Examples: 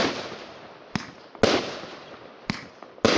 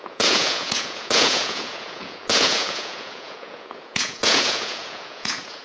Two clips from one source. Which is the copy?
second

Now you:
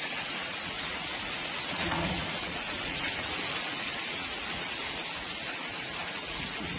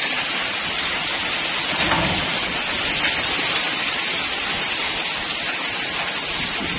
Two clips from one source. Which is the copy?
first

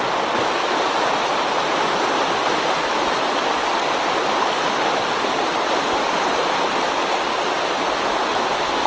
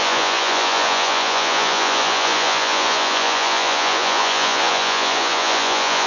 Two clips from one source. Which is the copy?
second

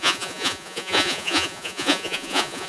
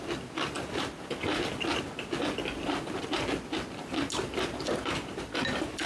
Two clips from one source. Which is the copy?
first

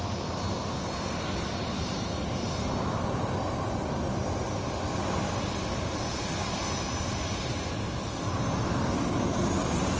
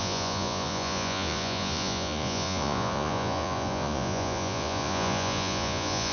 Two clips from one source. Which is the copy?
second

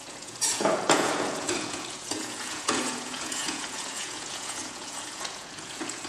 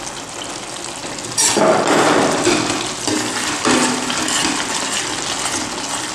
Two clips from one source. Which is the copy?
first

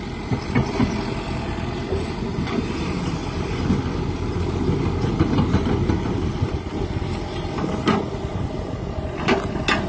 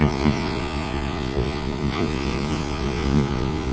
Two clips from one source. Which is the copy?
second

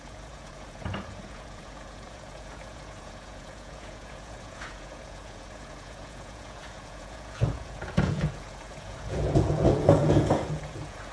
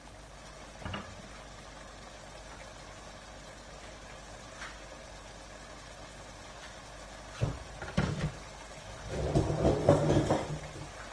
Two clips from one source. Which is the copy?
first